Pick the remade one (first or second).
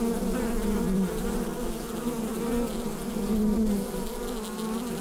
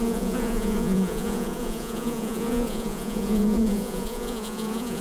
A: second